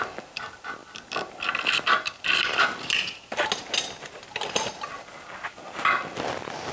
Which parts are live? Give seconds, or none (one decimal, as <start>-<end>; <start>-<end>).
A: 0.0-6.7